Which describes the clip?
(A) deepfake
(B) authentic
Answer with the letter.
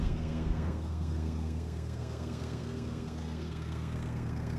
A